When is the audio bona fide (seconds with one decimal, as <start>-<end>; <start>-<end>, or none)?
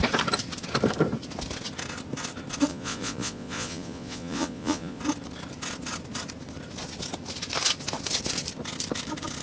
0.0-2.7; 5.0-9.4